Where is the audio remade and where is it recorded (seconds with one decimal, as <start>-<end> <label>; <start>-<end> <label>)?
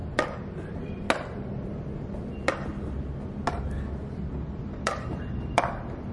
0.0-4.0 recorded; 4.0-6.1 remade